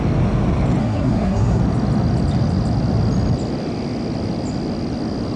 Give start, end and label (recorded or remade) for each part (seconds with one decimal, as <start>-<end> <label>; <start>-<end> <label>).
0.0-0.8 recorded; 0.8-1.6 remade; 1.6-5.4 recorded